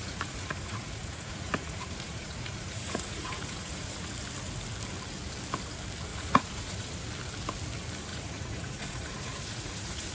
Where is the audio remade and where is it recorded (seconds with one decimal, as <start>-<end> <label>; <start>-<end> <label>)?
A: 0.0-4.1 remade; 4.1-6.1 recorded; 6.1-7.0 remade; 7.0-8.1 recorded; 8.1-10.1 remade